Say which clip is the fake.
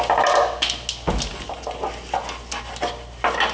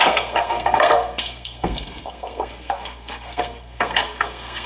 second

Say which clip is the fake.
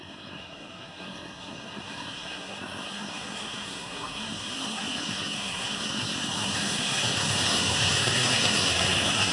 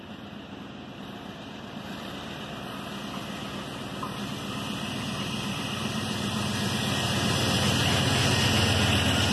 first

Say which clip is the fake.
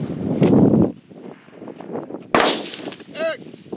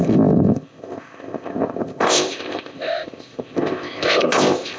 second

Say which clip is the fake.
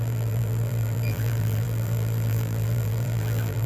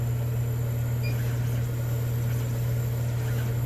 first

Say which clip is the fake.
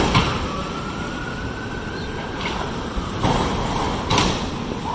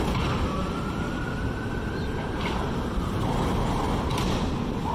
first